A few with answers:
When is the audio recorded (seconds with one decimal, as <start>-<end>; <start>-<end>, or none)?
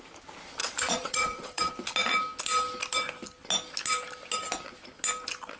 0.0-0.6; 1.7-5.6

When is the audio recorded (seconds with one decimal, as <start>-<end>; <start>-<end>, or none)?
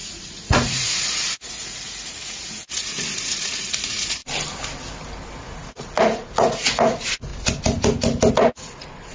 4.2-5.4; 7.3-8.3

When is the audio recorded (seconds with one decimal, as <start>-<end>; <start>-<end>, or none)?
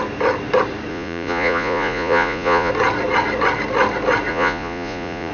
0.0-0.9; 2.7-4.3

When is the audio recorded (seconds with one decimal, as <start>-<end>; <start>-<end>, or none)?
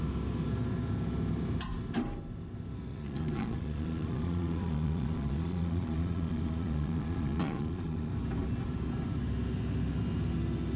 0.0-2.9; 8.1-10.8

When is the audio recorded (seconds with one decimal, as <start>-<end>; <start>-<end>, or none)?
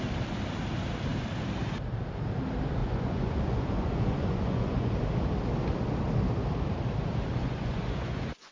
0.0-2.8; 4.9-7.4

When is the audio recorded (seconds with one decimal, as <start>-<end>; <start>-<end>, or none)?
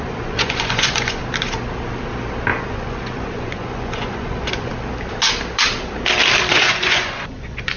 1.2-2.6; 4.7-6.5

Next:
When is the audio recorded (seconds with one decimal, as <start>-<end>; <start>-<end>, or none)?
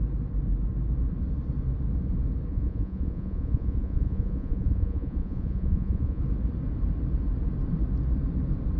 0.0-2.5; 6.2-8.8